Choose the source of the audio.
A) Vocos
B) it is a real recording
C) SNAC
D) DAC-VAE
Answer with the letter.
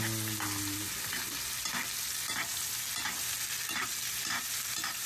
B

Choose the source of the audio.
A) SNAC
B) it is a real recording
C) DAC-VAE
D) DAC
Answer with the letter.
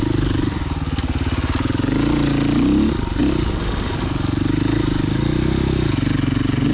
B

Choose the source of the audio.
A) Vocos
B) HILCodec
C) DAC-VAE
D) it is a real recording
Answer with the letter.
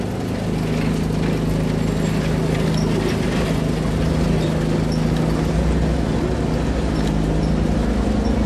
D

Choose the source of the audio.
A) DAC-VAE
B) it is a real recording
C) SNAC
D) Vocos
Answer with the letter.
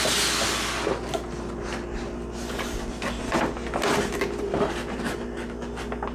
B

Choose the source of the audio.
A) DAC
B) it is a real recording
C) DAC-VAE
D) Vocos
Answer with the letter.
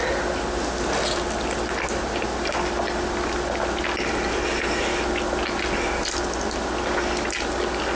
B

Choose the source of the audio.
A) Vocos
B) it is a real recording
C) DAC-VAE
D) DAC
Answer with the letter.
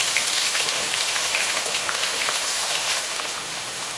C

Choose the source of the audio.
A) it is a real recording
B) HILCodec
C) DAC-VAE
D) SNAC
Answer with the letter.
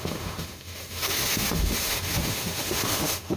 C